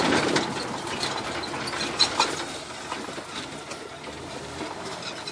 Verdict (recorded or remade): recorded